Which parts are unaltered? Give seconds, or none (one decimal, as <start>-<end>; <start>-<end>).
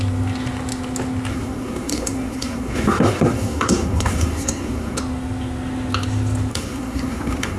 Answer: 0.0-1.3; 5.0-6.5